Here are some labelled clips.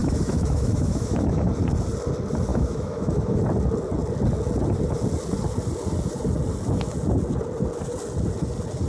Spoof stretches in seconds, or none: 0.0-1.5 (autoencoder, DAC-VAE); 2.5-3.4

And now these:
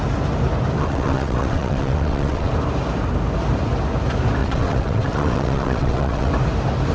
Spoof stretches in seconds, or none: 0.8-2.5 (vocoder, WaveNeXt); 4.4-6.3

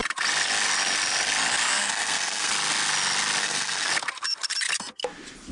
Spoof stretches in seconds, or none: 1.8-2.5 (codec, SNAC); 3.4-3.9

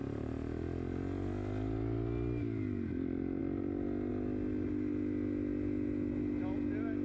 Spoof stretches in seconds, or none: none

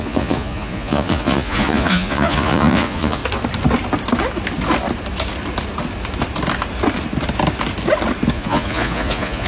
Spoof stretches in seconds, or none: 0.0-3.2 (vocoder, Vocos); 8.3-9.5

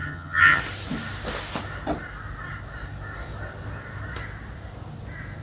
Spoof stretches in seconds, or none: 0.0-0.6 (vocoder, HiFi-GAN)